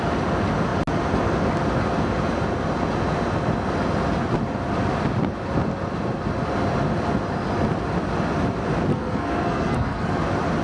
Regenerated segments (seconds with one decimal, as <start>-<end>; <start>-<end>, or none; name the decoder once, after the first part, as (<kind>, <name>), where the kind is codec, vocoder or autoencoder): 8.9-10.2 (codec, SNAC)